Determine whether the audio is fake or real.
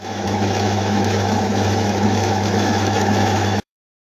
fake